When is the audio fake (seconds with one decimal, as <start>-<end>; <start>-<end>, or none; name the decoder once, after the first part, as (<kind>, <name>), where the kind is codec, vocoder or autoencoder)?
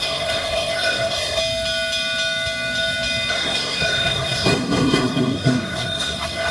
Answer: 0.0-1.4 (codec, SNAC); 3.3-6.5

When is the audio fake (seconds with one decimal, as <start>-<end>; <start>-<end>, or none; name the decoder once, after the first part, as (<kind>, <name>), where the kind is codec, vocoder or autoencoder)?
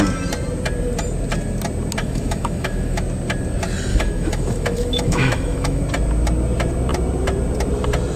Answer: 2.0-3.0 (autoencoder, DAC-VAE); 3.9-5.8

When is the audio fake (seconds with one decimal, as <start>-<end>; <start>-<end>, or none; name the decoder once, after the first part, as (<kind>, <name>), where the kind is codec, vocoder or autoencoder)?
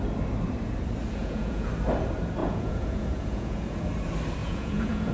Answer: 1.2-1.7 (vocoder, Vocos); 2.4-3.6; 4.4-5.1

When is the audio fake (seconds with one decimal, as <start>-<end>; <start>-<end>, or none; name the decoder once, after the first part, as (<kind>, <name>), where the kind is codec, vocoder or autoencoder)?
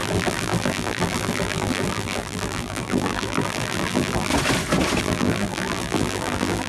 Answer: 0.0-4.3 (vocoder, BigVGAN v2); 5.0-6.7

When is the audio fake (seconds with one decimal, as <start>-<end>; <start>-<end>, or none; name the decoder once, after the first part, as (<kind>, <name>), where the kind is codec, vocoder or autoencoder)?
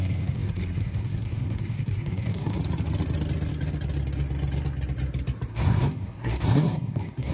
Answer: 0.0-2.6 (codec, SNAC); 5.5-7.3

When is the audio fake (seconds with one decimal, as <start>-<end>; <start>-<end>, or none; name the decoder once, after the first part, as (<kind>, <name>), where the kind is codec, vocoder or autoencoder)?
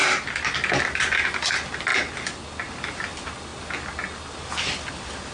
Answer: none